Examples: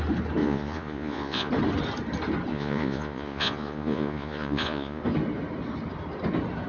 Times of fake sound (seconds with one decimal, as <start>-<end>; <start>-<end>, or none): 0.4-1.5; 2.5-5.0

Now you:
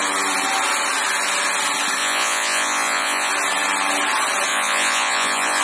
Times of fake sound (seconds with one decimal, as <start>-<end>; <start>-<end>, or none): 2.0-3.3; 4.5-5.6

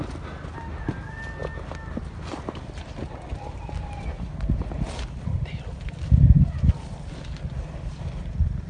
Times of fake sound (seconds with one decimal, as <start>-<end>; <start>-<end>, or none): none

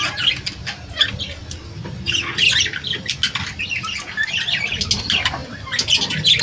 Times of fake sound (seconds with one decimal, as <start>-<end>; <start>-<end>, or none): none

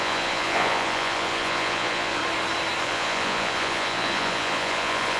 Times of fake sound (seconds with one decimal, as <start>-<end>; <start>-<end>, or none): 0.0-2.2; 2.8-5.2

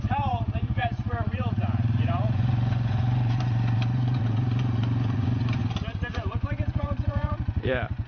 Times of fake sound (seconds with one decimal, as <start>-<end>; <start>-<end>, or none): 0.0-5.6; 6.1-8.1

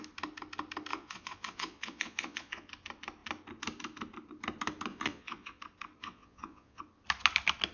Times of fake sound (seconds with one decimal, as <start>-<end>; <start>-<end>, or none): 0.9-2.7; 4.9-5.6; 6.0-6.8